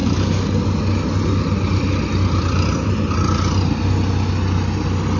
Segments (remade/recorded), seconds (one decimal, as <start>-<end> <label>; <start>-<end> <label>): 0.0-5.2 recorded